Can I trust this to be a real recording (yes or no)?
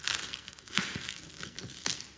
no